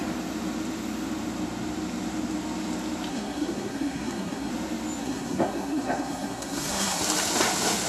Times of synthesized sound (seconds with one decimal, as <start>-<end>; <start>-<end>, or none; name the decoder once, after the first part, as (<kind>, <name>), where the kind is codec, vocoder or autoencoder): 3.1-4.5 (codec, SNAC); 5.0-7.0